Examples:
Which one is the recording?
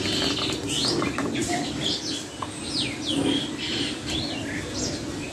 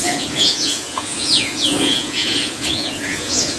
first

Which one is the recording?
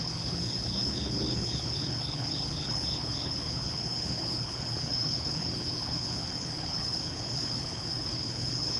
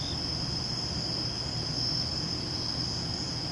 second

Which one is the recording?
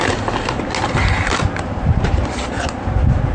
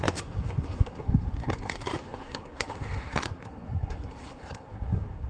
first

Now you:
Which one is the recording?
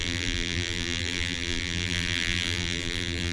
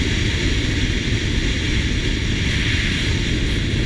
second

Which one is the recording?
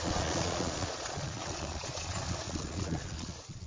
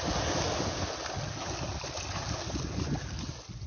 second